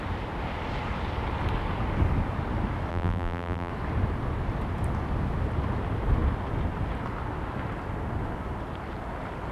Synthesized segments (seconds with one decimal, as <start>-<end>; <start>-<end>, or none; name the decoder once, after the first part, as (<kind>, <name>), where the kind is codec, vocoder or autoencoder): 2.9-3.7 (vocoder, BigVGAN v2)